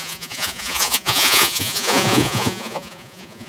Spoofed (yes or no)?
yes